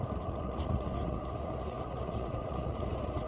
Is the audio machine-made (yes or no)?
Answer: yes